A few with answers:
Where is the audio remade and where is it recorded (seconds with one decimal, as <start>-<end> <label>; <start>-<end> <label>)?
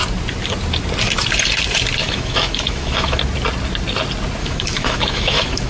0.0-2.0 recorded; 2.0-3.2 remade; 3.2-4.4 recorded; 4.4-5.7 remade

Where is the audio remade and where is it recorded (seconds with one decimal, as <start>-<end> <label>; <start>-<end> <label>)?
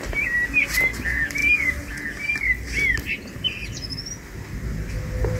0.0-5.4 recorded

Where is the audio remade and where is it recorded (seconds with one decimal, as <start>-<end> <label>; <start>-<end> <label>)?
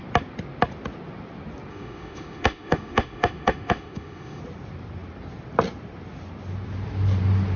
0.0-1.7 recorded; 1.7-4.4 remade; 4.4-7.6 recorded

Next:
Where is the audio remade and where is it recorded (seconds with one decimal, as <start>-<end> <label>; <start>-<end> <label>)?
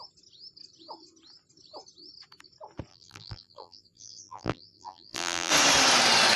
0.0-2.9 recorded; 2.9-5.5 remade; 5.5-6.4 recorded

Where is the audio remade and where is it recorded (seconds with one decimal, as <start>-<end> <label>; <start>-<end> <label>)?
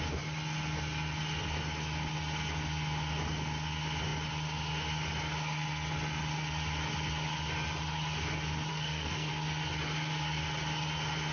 0.0-8.7 recorded; 8.7-9.3 remade; 9.3-11.3 recorded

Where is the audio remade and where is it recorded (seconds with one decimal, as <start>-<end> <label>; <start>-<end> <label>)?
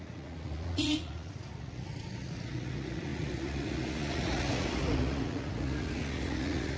0.0-6.8 remade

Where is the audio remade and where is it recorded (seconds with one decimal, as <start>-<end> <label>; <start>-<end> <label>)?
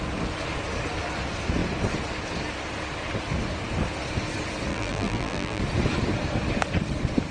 0.0-4.7 recorded; 4.7-5.6 remade; 5.6-7.3 recorded